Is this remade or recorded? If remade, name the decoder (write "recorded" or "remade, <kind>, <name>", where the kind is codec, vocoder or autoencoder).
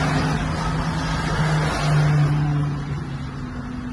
recorded